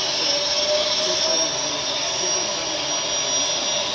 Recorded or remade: recorded